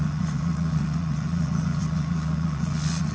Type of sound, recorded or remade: remade